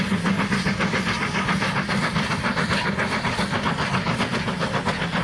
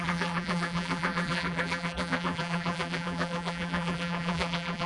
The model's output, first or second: second